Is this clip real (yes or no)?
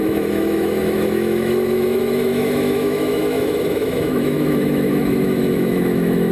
no